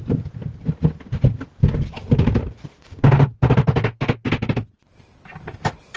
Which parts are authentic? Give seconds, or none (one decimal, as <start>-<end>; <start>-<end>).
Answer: 0.0-6.0